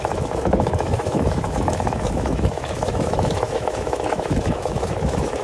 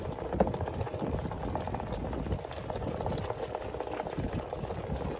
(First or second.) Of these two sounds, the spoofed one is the first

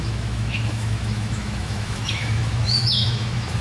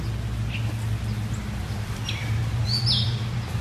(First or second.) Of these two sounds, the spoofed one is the first